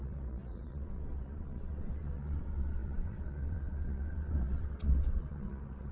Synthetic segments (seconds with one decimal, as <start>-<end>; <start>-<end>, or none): 0.0-5.9

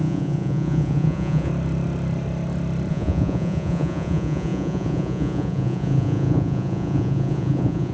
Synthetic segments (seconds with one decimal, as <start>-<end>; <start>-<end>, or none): 0.0-1.5; 2.9-7.9

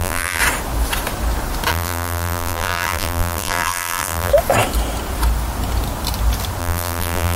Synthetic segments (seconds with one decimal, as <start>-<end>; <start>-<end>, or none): 0.0-0.4; 1.7-4.3; 6.6-7.4